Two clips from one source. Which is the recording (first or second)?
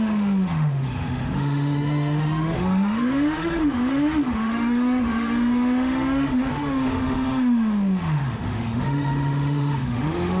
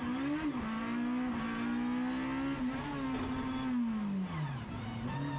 second